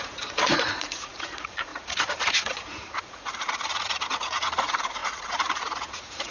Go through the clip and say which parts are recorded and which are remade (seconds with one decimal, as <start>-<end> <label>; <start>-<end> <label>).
0.0-6.3 remade